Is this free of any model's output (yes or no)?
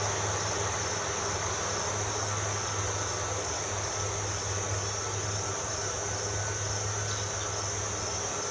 yes